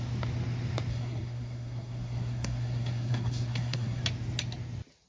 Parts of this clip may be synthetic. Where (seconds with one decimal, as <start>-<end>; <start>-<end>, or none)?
0.9-4.0